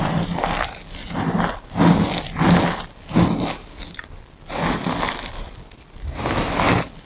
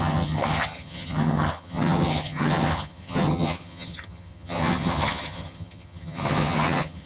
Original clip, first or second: first